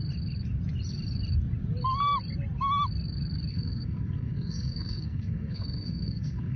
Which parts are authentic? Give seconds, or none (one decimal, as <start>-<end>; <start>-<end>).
0.0-3.5